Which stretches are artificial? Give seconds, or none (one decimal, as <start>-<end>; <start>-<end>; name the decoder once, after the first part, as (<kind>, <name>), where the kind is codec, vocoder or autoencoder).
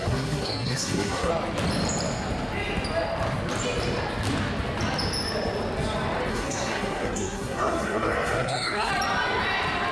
0.0-1.3 (codec, SNAC); 6.3-8.9